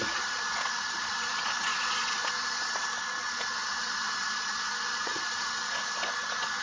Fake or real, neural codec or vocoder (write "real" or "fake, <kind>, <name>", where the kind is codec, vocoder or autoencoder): fake, vocoder, Vocos